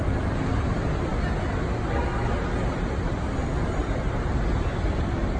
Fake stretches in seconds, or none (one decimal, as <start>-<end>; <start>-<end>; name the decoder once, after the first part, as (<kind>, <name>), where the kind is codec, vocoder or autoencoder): none